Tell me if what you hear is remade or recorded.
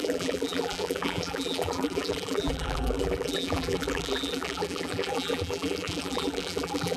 remade